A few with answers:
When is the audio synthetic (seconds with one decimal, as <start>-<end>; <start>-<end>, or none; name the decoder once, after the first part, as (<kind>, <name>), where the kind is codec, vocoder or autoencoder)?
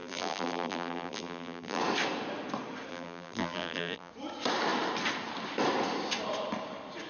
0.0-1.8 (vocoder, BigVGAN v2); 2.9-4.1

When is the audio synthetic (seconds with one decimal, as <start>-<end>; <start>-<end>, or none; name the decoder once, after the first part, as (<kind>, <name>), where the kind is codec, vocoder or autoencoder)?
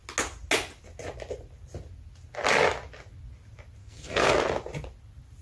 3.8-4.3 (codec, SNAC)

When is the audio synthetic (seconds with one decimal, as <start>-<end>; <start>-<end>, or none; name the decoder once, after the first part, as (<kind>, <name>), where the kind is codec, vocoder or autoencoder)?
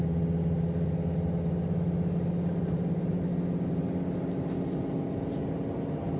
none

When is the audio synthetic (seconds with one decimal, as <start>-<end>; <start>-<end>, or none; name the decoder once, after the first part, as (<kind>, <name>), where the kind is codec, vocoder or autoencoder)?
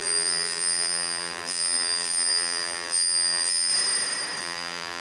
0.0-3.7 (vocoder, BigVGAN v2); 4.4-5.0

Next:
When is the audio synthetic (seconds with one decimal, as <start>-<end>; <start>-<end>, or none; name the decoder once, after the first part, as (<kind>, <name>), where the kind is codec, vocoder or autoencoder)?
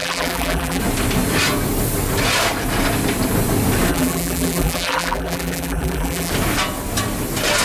0.0-0.8 (vocoder, BigVGAN v2); 3.9-6.3